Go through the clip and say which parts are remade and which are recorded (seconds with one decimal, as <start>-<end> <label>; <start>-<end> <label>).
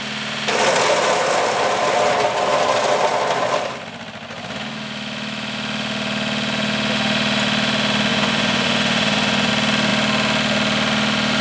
0.0-8.1 recorded; 8.1-9.5 remade; 9.5-11.4 recorded